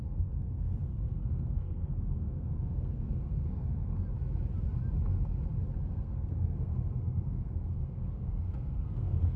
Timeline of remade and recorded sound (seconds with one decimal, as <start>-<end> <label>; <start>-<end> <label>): 0.0-3.9 remade; 3.9-5.9 recorded; 5.9-9.4 remade